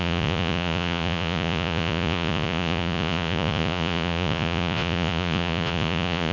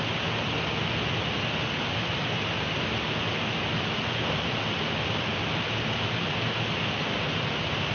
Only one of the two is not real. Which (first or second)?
first